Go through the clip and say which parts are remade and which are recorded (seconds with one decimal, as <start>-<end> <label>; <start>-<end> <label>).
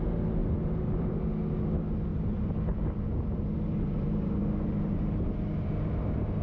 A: 0.0-0.4 recorded; 0.4-1.2 remade; 1.2-2.1 recorded; 2.1-5.9 remade; 5.9-6.4 recorded